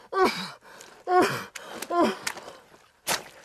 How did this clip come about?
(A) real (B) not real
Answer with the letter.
A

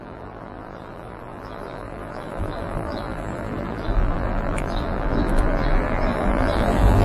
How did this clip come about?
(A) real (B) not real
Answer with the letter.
B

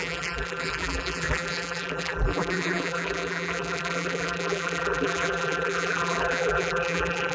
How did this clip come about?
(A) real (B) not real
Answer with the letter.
B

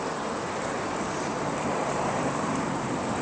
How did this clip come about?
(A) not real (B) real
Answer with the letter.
A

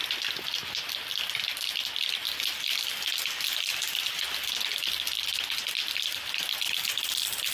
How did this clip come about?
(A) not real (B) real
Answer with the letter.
B